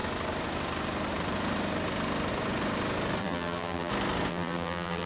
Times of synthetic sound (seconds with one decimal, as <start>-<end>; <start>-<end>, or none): 3.2-3.9; 4.3-5.1